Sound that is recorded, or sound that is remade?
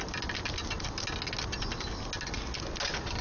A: recorded